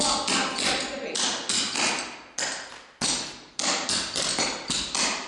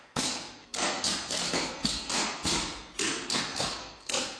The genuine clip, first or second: first